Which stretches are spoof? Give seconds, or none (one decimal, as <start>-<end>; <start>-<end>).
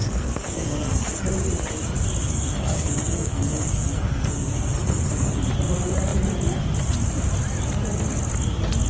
0.0-1.2; 2.2-5.4